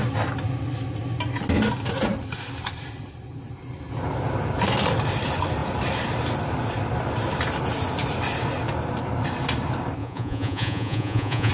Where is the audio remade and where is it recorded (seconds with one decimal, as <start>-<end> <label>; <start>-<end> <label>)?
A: 0.0-10.0 recorded; 10.0-11.5 remade